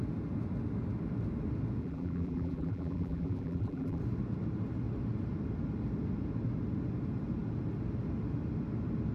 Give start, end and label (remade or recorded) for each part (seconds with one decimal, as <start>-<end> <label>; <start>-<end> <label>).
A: 0.0-1.8 recorded; 1.8-4.0 remade; 4.0-9.1 recorded